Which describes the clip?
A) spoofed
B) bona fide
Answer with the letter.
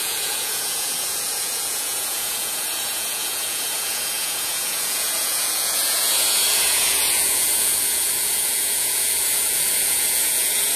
A